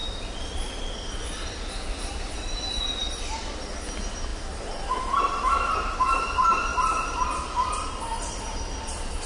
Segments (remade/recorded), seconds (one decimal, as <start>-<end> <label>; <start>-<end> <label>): 0.0-0.9 remade; 0.9-4.3 recorded; 4.3-5.0 remade; 5.0-6.7 recorded; 6.7-7.4 remade; 7.4-9.3 recorded